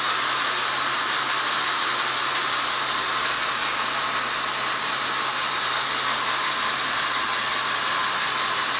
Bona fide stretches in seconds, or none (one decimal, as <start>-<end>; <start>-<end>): 0.0-8.8